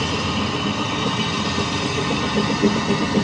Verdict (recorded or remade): recorded